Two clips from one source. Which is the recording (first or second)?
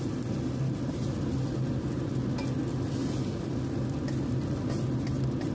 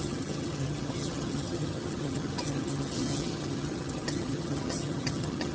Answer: first